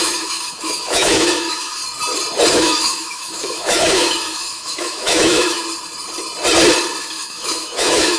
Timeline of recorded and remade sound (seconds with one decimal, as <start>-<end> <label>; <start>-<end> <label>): 0.0-1.8 remade; 1.8-2.5 recorded; 2.5-5.6 remade; 5.6-7.0 recorded; 7.0-8.2 remade